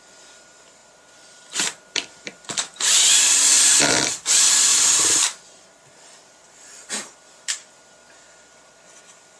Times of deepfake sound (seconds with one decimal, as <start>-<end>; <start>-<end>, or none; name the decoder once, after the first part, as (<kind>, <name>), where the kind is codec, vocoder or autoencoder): 0.0-9.4 (vocoder, BigVGAN v2)